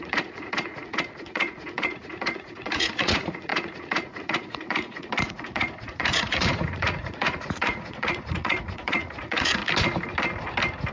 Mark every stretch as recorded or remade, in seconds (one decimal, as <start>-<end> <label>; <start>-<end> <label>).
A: 0.0-9.6 remade; 9.6-10.9 recorded